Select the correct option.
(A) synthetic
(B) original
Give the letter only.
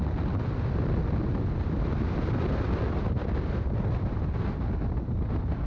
B